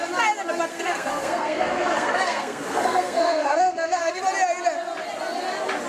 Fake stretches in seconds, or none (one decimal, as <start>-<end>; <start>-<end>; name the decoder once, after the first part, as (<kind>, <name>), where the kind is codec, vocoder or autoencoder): 0.7-4.2 (codec, SNAC)